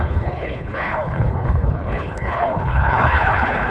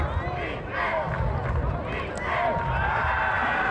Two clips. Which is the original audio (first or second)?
second